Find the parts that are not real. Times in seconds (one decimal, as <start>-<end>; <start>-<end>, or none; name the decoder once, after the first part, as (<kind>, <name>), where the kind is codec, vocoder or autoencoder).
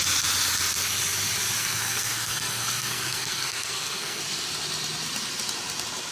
1.6-4.2 (codec, SNAC)